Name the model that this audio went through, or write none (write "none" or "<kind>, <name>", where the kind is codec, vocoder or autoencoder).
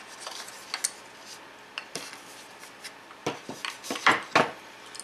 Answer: none